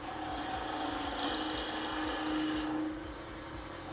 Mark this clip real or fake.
real